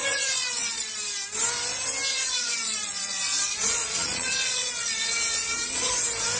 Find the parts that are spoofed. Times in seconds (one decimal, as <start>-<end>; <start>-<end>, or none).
0.0-0.9; 2.1-5.9